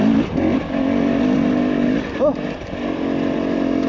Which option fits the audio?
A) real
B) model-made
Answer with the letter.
A